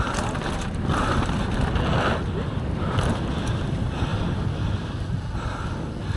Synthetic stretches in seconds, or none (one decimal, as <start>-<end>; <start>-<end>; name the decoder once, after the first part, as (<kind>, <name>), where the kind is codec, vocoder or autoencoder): none